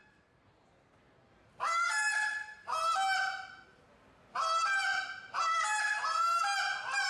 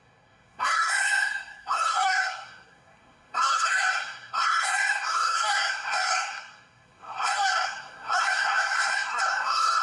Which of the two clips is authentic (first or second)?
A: first